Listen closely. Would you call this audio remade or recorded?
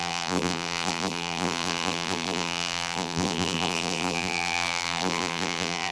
remade